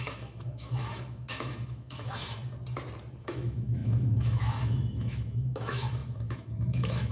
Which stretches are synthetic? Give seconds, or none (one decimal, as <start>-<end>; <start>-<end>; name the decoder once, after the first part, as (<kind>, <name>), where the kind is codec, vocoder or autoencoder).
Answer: 0.0-2.4 (autoencoder, DAC-VAE); 3.2-7.1